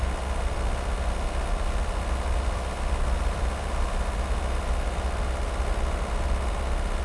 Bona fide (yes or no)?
yes